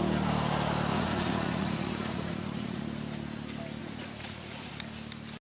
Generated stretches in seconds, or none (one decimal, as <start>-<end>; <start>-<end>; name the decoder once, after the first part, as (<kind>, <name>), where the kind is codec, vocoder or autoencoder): 0.9-2.8 (vocoder, Vocos); 3.8-4.7